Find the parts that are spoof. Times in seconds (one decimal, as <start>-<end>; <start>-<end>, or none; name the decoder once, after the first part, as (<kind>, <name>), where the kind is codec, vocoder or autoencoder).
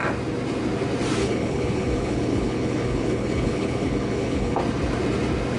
1.2-4.6 (codec, HILCodec)